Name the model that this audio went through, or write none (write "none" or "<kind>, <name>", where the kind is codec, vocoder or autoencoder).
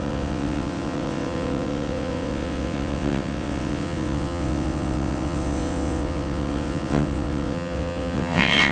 vocoder, WaveNeXt